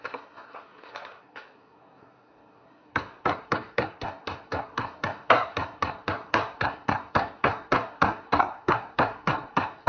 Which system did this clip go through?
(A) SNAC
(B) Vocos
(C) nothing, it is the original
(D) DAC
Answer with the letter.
A